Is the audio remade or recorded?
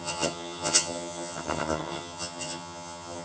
remade